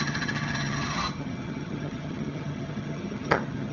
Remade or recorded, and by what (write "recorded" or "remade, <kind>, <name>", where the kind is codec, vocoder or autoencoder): remade, vocoder, HiFi-GAN